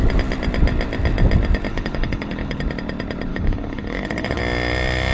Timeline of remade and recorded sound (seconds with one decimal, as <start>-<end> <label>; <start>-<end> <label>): 0.0-1.7 recorded; 1.7-2.6 remade; 2.6-3.3 recorded; 3.3-4.4 remade; 4.4-5.1 recorded